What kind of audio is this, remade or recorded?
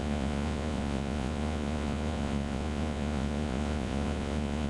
remade